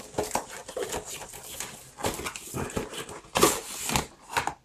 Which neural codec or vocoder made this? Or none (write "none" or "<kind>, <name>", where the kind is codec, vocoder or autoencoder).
none